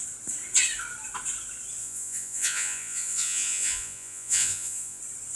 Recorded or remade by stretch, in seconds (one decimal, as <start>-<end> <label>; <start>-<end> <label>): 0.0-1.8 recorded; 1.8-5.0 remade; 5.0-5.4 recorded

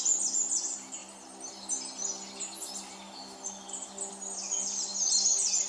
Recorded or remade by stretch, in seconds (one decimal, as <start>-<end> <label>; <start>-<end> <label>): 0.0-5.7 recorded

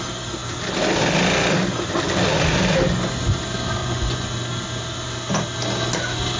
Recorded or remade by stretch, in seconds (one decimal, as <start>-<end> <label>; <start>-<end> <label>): 0.0-3.8 recorded; 3.8-4.3 remade; 4.3-6.4 recorded

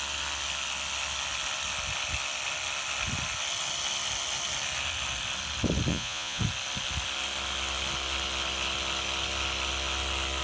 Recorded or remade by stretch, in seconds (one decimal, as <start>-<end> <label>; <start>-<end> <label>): 0.0-5.9 recorded; 5.9-6.4 remade; 6.4-10.4 recorded

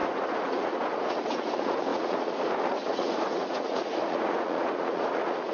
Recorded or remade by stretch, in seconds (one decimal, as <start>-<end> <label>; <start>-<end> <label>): 0.0-5.5 remade

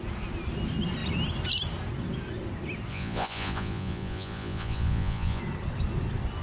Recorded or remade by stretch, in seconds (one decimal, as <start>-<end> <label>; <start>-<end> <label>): 0.0-2.9 recorded; 2.9-5.4 remade; 5.4-6.4 recorded

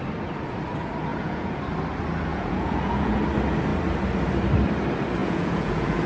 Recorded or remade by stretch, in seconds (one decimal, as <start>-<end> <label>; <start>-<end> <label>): 0.0-1.1 recorded; 1.1-1.6 remade; 1.6-2.3 recorded; 2.3-3.2 remade; 3.2-5.2 recorded; 5.2-6.1 remade

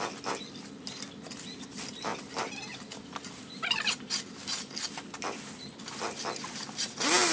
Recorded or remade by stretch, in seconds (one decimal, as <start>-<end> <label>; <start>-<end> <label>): 0.0-7.3 recorded